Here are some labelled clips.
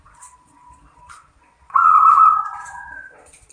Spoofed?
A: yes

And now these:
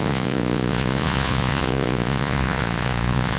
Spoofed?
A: yes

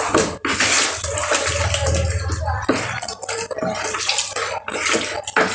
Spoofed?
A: no